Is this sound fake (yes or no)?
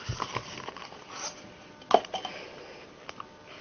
no